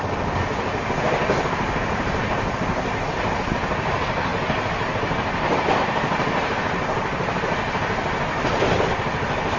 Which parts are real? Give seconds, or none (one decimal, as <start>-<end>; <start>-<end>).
0.0-9.6

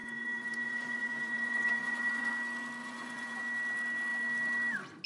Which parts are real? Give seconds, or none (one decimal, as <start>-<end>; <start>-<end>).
2.3-2.8; 3.4-5.1

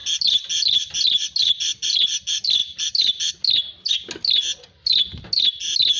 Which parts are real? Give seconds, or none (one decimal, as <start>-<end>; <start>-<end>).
0.0-6.0